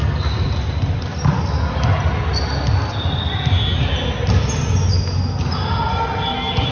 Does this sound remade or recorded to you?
recorded